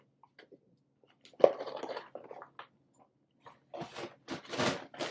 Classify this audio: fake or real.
real